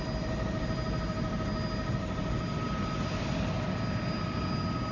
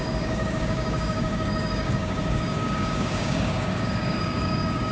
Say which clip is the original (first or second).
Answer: first